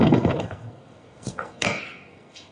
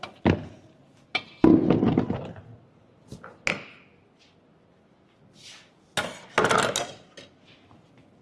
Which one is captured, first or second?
second